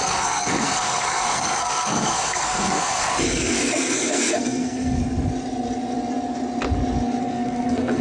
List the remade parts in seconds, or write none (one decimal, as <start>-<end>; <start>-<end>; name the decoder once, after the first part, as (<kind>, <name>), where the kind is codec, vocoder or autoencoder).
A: 0.0-5.0 (codec, SNAC); 7.2-8.0